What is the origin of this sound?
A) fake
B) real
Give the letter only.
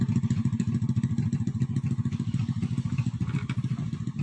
B